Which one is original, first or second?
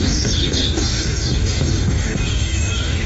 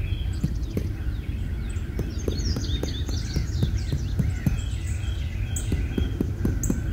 second